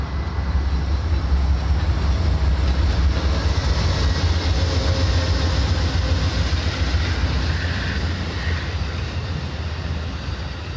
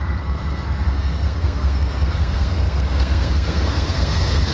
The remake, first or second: second